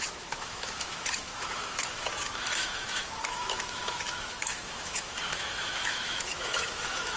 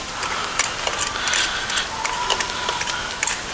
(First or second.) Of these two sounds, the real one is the second